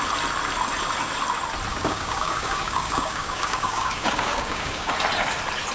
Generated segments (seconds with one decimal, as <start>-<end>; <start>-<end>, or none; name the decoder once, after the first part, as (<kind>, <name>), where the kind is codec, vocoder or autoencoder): 1.7-4.9 (codec, DAC)